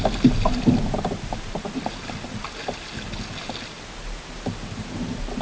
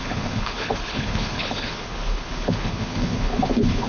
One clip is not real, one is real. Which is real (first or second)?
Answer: first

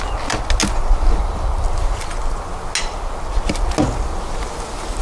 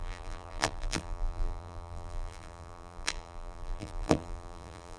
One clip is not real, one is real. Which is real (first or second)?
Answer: first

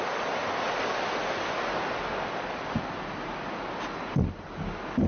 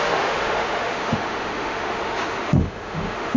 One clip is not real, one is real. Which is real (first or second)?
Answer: first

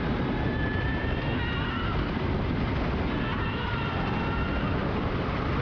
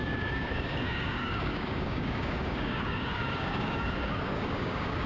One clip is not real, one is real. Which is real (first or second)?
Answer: first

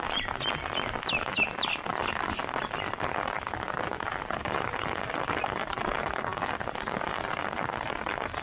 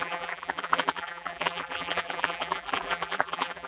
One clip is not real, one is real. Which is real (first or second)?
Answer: first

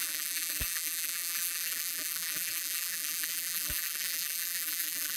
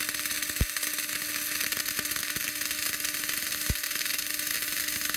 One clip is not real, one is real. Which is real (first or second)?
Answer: second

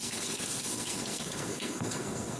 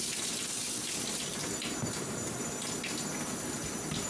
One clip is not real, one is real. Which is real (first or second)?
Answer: second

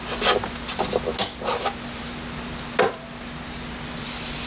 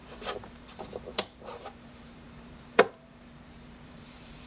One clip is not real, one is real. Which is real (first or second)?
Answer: first